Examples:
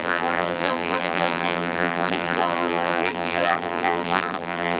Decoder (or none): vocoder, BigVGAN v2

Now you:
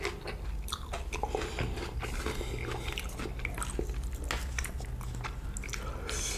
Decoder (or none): none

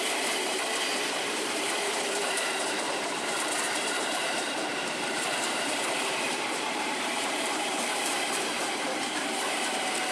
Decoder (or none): vocoder, BigVGAN v2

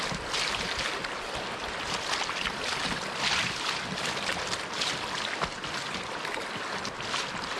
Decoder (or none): none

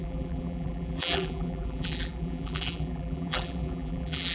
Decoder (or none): vocoder, BigVGAN v2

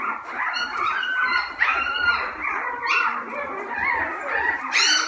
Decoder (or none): vocoder, BigVGAN v2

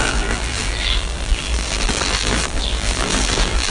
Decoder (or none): vocoder, BigVGAN v2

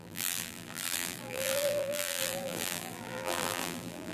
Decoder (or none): vocoder, BigVGAN v2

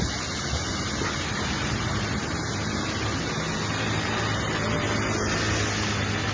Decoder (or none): none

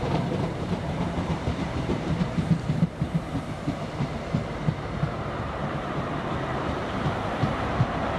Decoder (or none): vocoder, BigVGAN v2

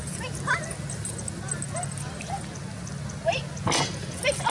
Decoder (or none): none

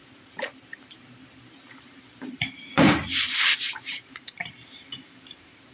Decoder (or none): vocoder, BigVGAN v2